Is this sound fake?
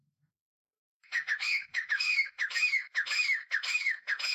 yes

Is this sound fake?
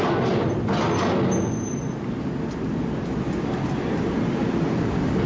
no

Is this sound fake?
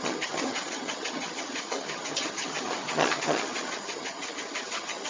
yes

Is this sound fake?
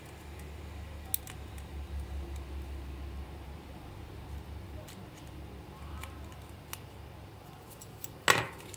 no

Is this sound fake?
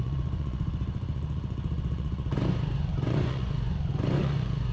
yes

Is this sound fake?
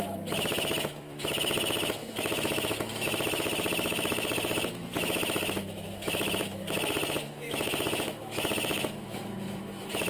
yes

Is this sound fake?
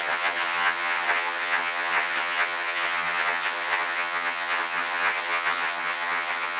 yes